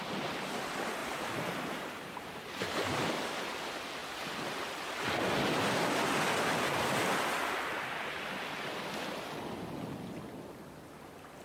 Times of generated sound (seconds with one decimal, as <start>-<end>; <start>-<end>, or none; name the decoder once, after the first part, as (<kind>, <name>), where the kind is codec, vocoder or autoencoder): 1.0-3.1 (vocoder, BigVGAN v2)